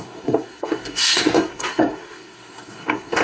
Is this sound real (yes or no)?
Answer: no